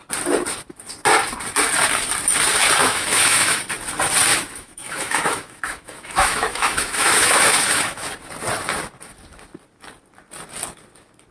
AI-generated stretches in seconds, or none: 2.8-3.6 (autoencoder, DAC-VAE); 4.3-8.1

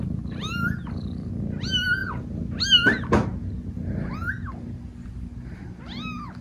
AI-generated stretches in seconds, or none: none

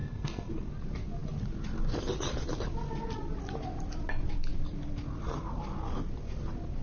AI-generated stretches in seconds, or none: 0.0-0.5 (codec, SNAC)

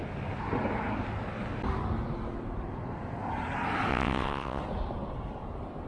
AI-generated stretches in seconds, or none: 3.9-4.6 (vocoder, WaveNeXt)

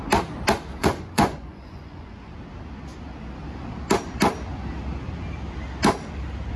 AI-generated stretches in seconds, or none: 0.8-2.3 (vocoder, Vocos)

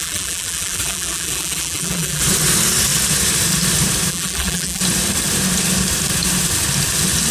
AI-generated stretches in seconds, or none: 0.0-2.2 (vocoder, BigVGAN v2); 4.1-4.8